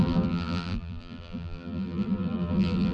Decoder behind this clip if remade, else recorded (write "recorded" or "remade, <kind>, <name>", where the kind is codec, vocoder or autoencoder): remade, vocoder, BigVGAN v2